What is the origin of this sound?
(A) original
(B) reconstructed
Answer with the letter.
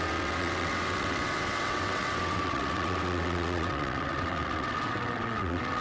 B